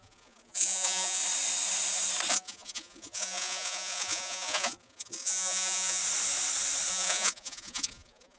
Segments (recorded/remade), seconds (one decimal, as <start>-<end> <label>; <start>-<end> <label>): 0.0-1.2 remade; 1.2-2.3 recorded; 2.3-6.0 remade; 6.0-6.9 recorded; 6.9-8.4 remade

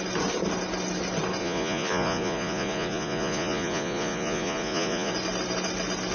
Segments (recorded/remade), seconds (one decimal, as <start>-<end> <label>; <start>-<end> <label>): 0.0-1.4 recorded; 1.4-5.1 remade; 5.1-6.1 recorded

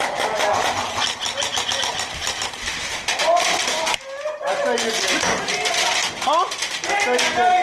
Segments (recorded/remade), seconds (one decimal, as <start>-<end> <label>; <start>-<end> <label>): 0.0-7.6 recorded

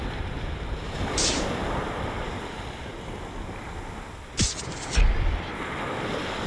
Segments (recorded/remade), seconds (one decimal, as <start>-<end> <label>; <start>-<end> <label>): 0.0-6.5 remade

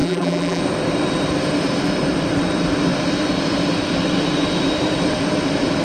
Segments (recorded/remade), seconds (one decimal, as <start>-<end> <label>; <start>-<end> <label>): 0.0-0.6 remade; 0.6-5.8 recorded

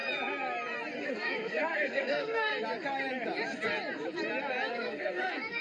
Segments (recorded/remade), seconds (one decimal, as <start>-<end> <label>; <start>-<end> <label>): 0.0-1.1 recorded; 1.1-2.5 remade; 2.5-4.7 recorded; 4.7-5.6 remade

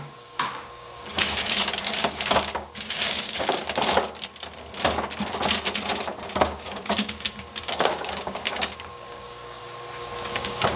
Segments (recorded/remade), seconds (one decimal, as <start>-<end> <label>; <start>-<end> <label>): 0.0-3.6 remade; 3.6-6.3 recorded; 6.3-9.6 remade; 9.6-10.3 recorded; 10.3-10.8 remade

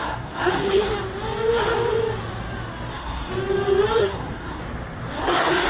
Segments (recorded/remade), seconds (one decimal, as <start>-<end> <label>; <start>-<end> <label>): 0.0-0.9 remade; 0.9-2.9 recorded; 2.9-3.3 remade; 3.3-4.0 recorded; 4.0-4.6 remade; 4.6-5.2 recorded; 5.2-5.7 remade